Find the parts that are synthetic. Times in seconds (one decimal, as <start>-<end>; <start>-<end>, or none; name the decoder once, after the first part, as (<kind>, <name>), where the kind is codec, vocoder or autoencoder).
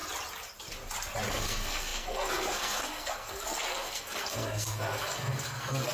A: 1.3-5.9 (codec, SNAC)